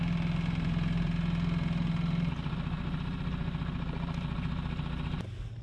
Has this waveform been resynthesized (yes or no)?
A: no